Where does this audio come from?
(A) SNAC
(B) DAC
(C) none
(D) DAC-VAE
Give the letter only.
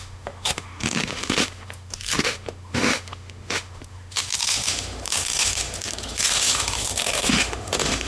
D